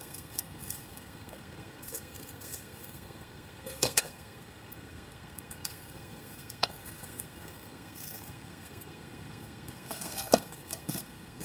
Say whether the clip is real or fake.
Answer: fake